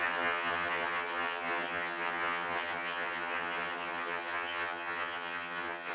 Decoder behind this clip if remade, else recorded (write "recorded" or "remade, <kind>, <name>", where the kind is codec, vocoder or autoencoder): remade, vocoder, HiFi-GAN